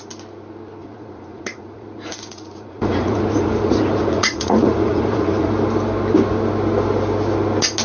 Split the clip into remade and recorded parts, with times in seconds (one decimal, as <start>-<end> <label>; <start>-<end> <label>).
0.0-0.8 recorded; 0.8-5.5 remade; 5.5-7.8 recorded